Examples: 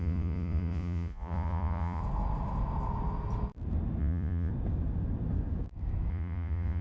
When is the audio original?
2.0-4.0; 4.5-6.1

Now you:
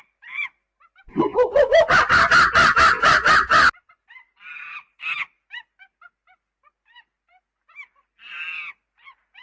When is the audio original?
0.0-9.4

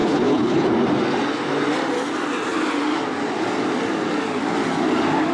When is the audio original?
0.7-5.3